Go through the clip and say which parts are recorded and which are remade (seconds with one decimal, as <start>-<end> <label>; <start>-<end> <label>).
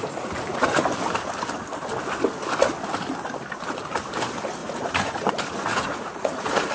0.0-4.6 recorded; 4.6-5.3 remade; 5.3-5.7 recorded; 5.7-6.7 remade